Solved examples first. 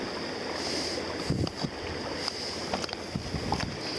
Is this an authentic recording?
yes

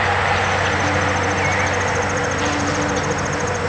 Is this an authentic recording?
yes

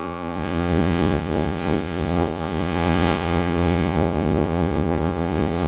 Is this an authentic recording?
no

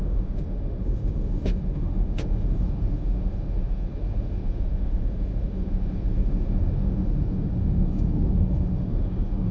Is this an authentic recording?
no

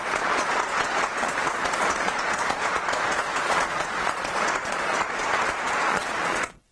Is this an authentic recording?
no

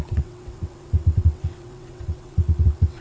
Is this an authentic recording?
no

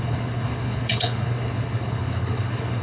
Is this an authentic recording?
no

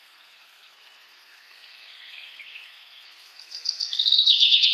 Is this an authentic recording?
no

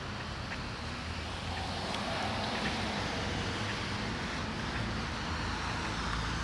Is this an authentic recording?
yes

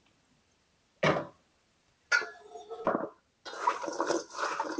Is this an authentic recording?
yes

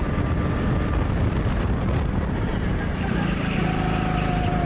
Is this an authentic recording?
yes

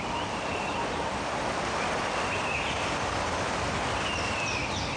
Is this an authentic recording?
yes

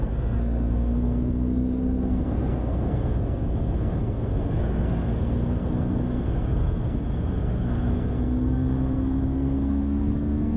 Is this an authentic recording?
no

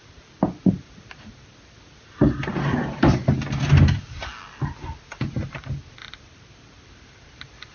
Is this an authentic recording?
yes